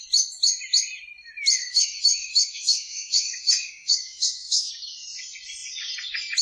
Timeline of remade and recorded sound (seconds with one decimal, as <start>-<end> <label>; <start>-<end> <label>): 0.0-1.6 recorded; 1.6-4.7 remade; 4.7-6.4 recorded